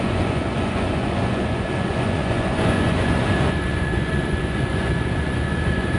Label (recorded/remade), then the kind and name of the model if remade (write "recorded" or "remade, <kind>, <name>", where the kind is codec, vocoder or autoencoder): remade, vocoder, Vocos